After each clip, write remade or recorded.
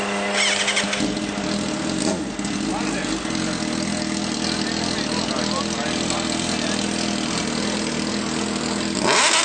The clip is recorded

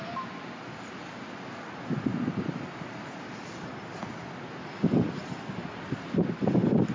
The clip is recorded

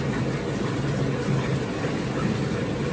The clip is recorded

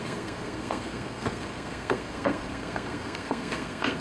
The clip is remade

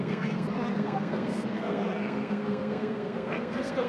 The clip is remade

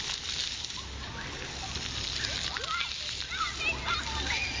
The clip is recorded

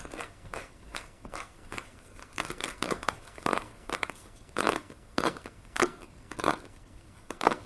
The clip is remade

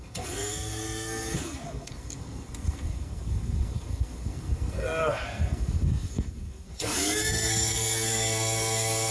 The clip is remade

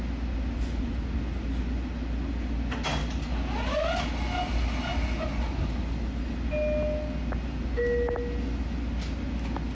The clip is recorded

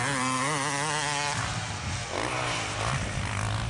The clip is recorded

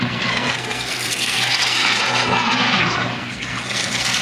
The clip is remade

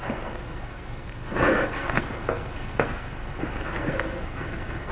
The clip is remade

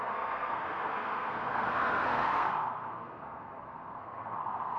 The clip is remade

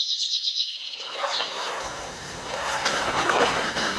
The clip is remade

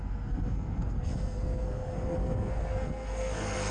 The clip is remade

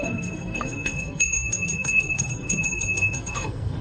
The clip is remade